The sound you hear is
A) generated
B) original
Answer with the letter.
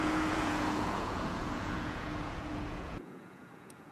A